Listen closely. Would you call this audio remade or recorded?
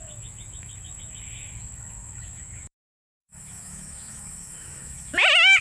remade